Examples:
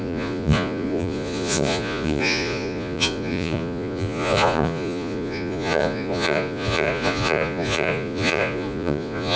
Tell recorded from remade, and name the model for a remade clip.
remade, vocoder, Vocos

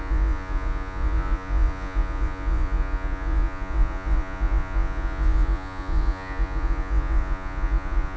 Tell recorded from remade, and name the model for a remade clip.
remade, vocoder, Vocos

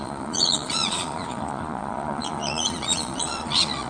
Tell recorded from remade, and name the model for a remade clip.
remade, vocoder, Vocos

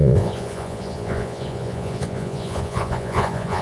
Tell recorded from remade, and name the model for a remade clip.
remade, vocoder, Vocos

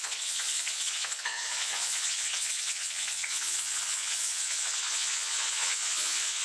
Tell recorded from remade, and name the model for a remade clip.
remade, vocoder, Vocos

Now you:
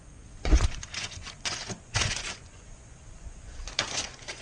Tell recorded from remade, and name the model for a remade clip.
remade, vocoder, Vocos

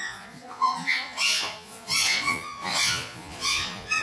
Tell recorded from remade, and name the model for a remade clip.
remade, vocoder, Vocos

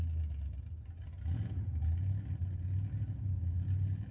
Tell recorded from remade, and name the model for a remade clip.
recorded